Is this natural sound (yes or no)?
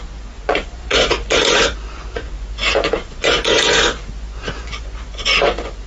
no